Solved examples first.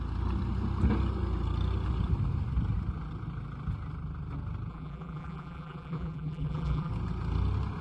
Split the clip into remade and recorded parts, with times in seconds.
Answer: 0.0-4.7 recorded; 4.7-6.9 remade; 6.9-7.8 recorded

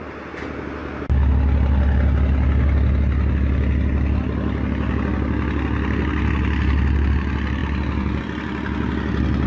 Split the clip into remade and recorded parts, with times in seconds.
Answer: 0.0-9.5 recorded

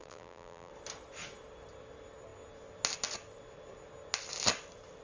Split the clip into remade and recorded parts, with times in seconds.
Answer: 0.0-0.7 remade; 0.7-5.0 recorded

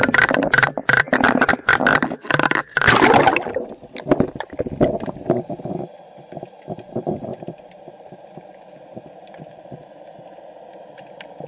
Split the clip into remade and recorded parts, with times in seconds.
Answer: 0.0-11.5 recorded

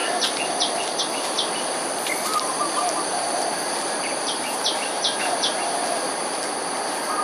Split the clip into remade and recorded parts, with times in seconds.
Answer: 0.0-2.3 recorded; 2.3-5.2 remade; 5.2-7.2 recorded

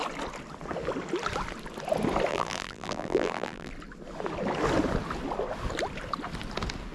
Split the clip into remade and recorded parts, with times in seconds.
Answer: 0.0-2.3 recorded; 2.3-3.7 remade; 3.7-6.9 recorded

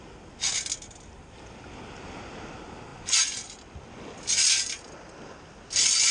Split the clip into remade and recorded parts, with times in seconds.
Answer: 0.0-6.1 recorded